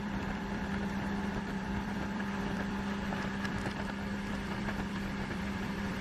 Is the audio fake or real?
fake